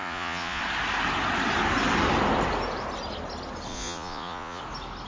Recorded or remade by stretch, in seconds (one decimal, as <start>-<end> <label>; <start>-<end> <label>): 0.0-0.6 remade; 0.6-3.7 recorded; 3.7-4.6 remade; 4.6-5.1 recorded